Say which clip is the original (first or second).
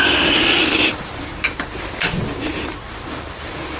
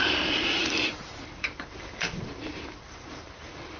first